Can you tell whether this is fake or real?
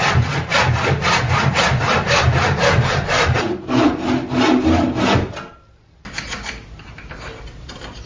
real